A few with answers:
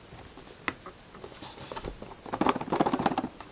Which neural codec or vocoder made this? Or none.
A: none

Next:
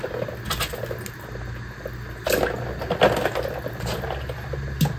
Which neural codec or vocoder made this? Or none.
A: none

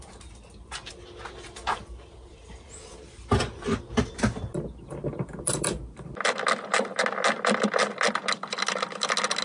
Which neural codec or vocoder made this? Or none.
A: none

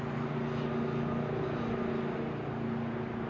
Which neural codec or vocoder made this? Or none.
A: none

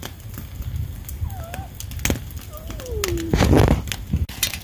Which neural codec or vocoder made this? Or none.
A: none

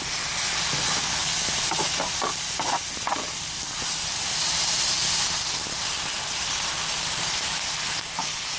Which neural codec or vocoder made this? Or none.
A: none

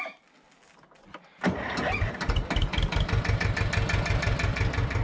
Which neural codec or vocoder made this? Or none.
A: none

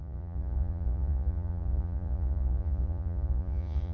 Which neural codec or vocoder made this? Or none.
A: vocoder, Vocos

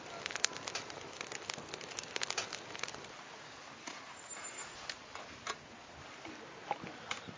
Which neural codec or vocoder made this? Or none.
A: none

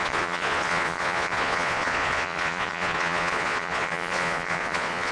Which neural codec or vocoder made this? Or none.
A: vocoder, Vocos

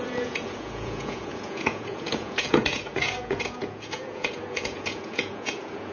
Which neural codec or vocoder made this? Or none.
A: vocoder, Vocos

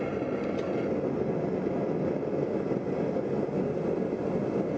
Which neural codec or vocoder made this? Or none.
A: none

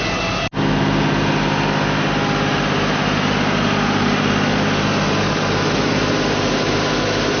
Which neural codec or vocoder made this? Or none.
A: none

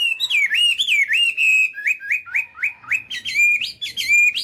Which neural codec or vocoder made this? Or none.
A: none